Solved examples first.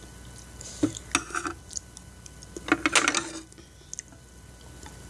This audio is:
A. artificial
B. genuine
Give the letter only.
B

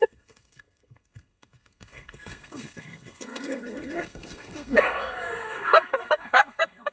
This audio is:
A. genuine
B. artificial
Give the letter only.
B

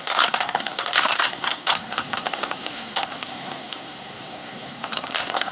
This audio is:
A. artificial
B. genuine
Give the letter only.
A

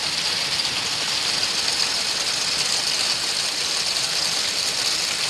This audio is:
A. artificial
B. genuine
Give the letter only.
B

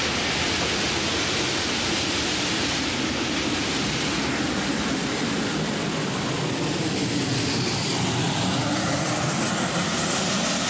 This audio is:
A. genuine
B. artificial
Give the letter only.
A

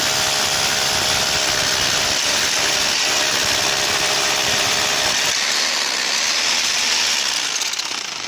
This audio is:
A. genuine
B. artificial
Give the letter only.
A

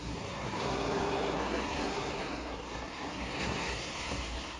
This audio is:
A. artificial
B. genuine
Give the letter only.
A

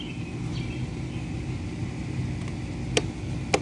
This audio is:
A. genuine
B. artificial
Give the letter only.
A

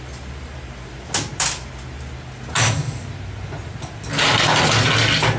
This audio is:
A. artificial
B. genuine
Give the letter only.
B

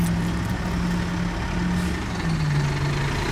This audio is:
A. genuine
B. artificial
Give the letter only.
A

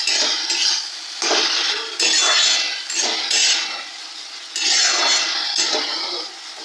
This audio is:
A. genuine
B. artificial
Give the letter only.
A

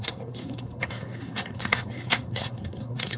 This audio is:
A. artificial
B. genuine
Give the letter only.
A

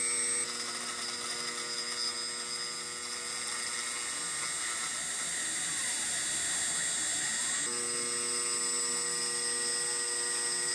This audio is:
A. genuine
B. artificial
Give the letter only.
A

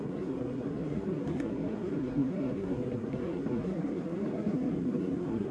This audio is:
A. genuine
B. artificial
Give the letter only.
B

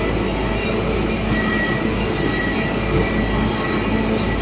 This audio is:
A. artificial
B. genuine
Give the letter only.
B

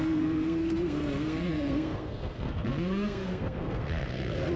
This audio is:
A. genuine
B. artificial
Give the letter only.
B